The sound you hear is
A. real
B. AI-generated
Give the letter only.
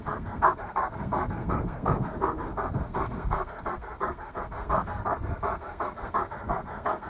B